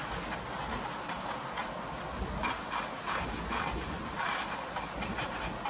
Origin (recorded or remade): recorded